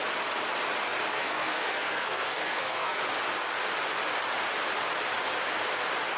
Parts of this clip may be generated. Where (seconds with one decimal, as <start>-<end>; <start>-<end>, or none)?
1.1-3.0

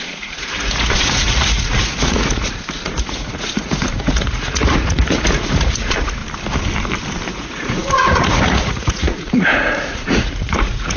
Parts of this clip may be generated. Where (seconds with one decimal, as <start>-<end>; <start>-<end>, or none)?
0.0-6.2; 7.3-11.0

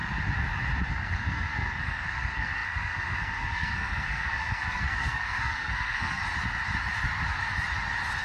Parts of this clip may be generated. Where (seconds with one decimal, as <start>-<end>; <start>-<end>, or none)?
0.9-6.2

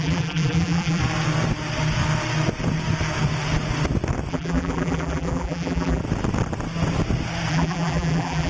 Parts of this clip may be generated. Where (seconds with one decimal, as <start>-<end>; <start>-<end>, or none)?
0.0-1.0; 4.3-6.0; 7.5-8.5

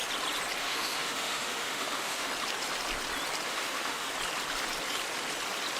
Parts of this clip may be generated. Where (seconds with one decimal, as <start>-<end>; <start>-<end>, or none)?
0.6-2.3; 3.5-4.1

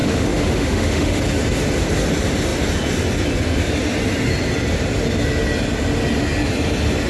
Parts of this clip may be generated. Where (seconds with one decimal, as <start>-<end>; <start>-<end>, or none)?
0.0-1.2

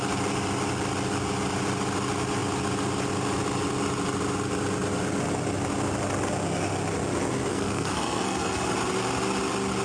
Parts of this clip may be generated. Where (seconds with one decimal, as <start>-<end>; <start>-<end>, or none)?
7.5-8.7

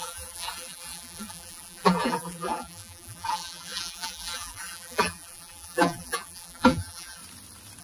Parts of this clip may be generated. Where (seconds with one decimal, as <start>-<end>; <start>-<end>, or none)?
0.0-7.2